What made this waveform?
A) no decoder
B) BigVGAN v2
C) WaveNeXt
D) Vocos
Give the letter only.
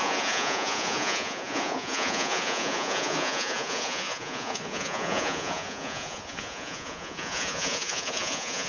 D